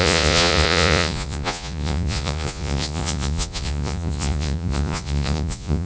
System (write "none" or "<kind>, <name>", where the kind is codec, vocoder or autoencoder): vocoder, Vocos